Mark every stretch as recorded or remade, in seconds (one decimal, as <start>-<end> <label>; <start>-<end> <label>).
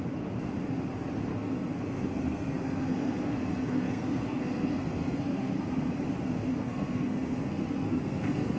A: 0.0-1.3 recorded; 1.3-5.9 remade; 5.9-6.5 recorded; 6.5-8.6 remade